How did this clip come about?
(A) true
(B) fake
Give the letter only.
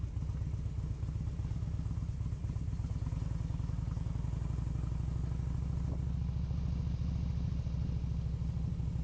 A